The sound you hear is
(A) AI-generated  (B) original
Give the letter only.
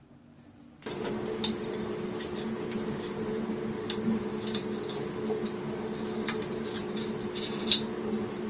B